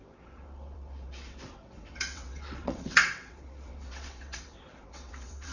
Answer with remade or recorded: remade